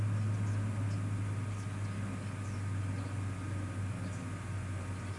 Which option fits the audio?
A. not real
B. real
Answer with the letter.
B